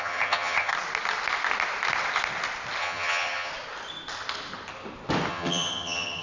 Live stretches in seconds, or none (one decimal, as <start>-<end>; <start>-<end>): 0.7-2.8; 3.5-5.3